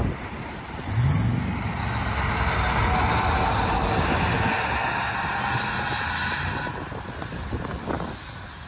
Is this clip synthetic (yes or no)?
no